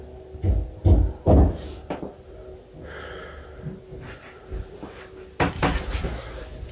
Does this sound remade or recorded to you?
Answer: recorded